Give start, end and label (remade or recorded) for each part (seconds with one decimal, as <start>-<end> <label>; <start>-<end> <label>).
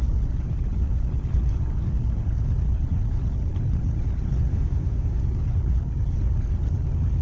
0.0-4.5 remade; 4.5-5.3 recorded; 5.3-7.2 remade